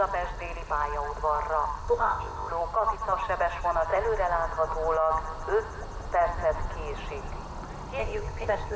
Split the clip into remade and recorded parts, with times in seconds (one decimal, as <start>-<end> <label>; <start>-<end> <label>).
0.0-1.8 recorded; 1.8-2.5 remade; 2.5-8.0 recorded; 8.0-8.8 remade